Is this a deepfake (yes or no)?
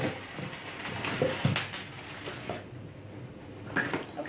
no